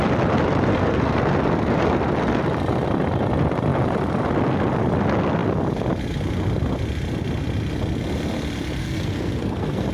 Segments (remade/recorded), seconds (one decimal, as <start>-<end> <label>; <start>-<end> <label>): 0.0-0.7 recorded; 0.7-1.2 remade; 1.2-8.8 recorded; 8.8-9.9 remade